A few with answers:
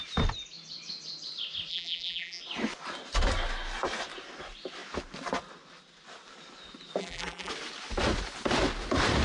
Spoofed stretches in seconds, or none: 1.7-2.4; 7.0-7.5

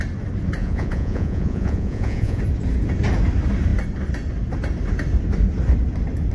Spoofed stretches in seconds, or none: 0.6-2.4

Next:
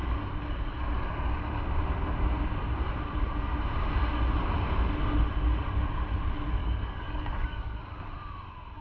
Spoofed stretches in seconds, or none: 6.6-7.8

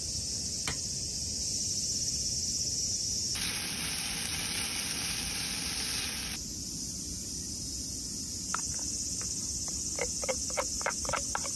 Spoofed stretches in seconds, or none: none

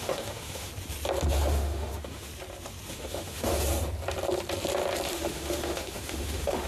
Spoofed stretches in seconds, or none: 0.0-0.7; 1.5-2.3; 2.9-3.5; 5.1-6.7

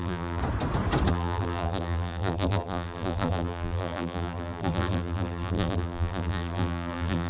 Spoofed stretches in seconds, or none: 0.0-0.4; 1.1-7.3